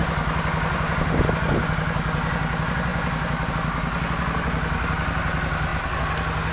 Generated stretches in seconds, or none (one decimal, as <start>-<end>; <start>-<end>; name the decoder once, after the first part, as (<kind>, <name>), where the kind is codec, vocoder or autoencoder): none